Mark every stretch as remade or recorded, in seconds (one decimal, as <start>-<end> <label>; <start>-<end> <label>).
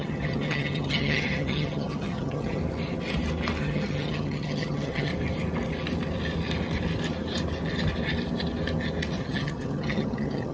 0.0-2.6 remade; 2.6-3.6 recorded; 3.6-5.1 remade; 5.1-9.2 recorded; 9.2-10.5 remade